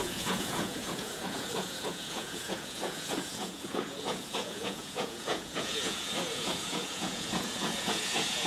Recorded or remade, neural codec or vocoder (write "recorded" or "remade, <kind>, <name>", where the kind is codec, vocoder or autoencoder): remade, vocoder, Vocos